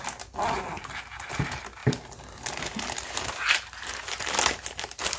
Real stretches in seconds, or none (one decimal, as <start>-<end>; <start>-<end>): 0.0-5.2